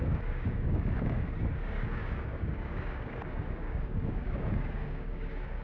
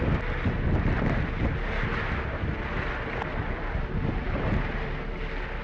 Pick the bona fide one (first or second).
second